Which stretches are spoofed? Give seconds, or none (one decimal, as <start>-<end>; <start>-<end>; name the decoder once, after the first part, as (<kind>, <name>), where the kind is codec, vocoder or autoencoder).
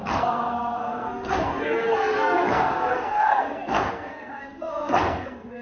0.0-5.6 (codec, SNAC)